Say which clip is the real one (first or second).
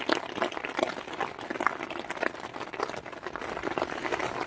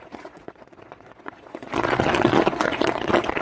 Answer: first